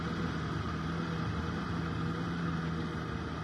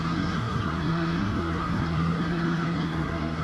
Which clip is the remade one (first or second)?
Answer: second